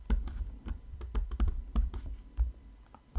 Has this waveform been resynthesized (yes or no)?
yes